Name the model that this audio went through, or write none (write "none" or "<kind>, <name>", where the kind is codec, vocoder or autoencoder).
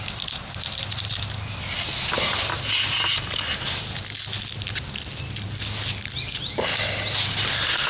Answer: none